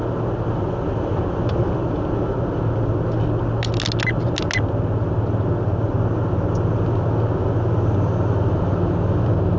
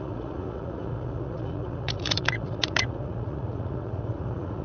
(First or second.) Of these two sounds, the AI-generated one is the second